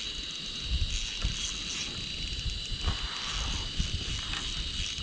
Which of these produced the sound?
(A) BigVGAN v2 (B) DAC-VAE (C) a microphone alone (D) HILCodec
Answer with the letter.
C